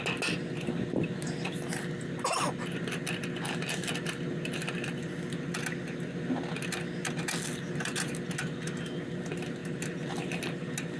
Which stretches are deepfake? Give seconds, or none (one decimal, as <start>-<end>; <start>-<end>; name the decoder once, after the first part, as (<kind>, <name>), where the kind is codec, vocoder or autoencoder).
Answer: none